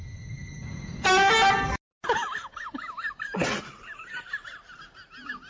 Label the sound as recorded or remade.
recorded